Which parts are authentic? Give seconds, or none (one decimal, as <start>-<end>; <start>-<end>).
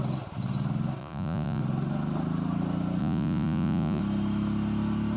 0.0-1.0; 1.6-3.0; 4.0-5.2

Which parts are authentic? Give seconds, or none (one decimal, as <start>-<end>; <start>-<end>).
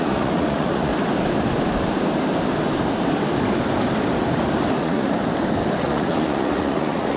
0.9-4.8; 5.2-5.8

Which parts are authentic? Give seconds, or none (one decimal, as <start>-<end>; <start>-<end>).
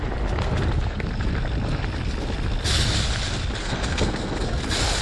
0.0-3.6; 4.6-5.0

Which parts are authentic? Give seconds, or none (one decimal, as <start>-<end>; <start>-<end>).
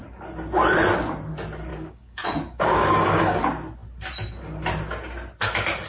0.0-1.7; 3.4-5.9